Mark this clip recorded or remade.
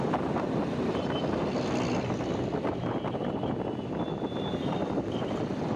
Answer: recorded